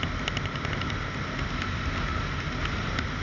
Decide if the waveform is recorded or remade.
recorded